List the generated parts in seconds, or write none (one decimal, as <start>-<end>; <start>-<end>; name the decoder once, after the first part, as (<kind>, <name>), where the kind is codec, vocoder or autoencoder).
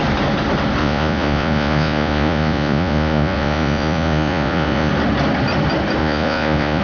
0.8-4.9 (vocoder, Vocos); 6.0-6.8